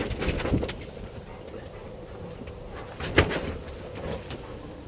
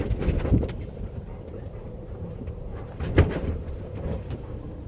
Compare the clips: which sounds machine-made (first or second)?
second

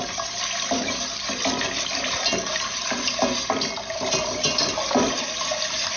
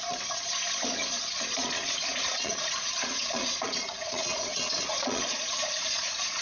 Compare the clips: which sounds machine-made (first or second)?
second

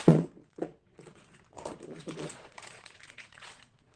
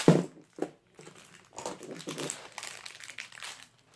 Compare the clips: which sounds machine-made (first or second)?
first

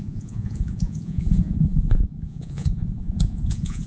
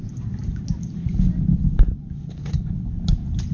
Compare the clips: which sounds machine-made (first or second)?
first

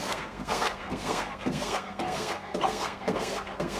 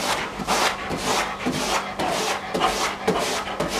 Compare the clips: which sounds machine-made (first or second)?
first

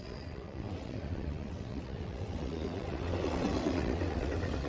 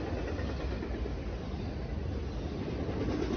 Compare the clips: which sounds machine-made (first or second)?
first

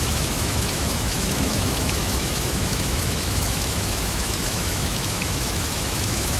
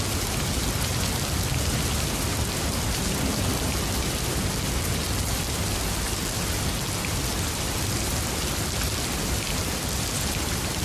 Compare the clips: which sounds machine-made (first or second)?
first